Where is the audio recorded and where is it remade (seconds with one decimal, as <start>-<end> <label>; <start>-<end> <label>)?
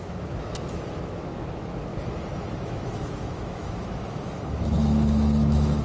0.0-1.9 remade; 1.9-2.6 recorded; 2.6-5.8 remade